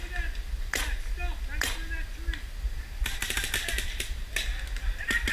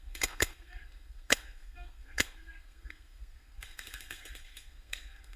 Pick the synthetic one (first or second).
second